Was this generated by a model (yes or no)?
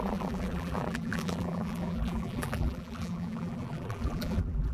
yes